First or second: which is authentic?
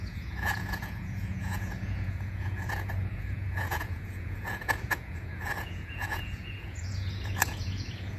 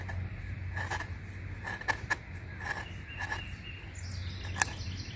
second